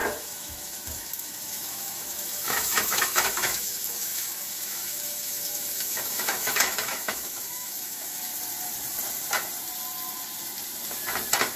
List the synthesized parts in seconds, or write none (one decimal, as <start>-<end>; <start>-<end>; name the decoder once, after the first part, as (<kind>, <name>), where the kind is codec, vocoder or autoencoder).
0.0-8.3 (autoencoder, DAC-VAE)